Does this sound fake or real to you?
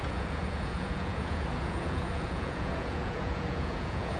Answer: fake